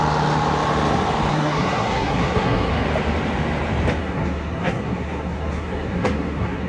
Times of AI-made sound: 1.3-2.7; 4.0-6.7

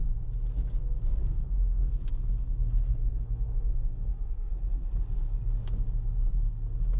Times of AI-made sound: 1.2-1.9; 2.4-4.5